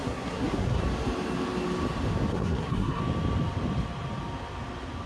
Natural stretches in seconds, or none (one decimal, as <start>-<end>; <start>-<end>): 0.8-2.3; 3.0-5.1